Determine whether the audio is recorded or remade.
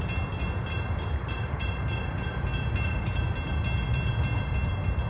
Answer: recorded